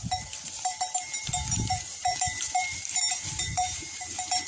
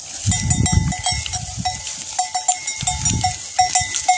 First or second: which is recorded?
second